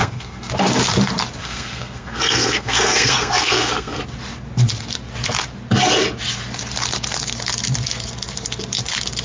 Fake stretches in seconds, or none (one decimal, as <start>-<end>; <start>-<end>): 0.0-0.5; 1.4-4.0